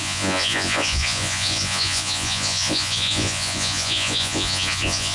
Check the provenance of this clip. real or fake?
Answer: fake